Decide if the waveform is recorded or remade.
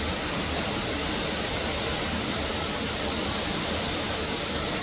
recorded